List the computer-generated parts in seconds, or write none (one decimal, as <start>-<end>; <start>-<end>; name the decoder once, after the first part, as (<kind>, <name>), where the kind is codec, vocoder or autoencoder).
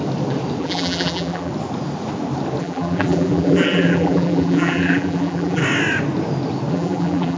0.6-1.5 (vocoder, BigVGAN v2); 2.6-5.6; 6.7-7.4